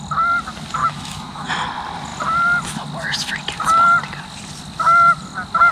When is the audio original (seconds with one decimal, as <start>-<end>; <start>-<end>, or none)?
0.0-0.8; 1.5-5.7